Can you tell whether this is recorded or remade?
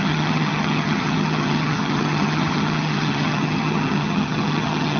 remade